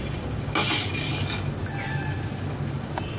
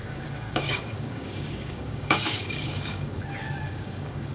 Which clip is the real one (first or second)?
first